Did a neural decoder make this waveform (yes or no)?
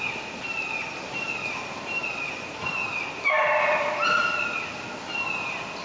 no